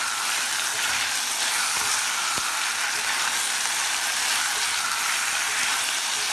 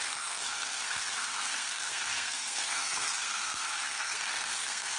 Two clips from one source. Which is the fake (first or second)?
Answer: second